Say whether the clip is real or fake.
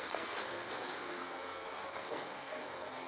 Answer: fake